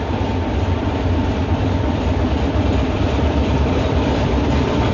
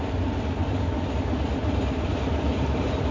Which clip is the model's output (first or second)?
first